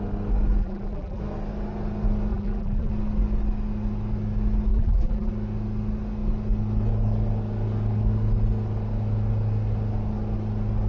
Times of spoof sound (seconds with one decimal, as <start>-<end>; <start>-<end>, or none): 0.6-1.2; 2.3-2.9; 4.7-5.3